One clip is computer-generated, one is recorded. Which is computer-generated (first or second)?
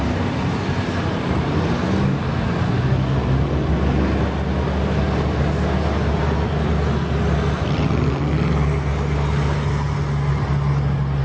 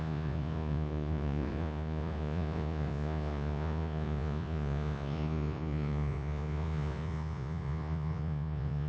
second